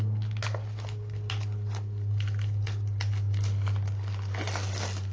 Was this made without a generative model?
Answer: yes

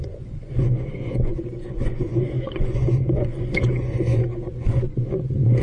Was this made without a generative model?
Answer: no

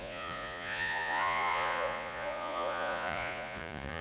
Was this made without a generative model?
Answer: no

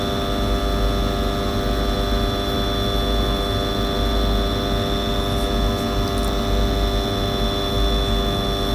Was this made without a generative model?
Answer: yes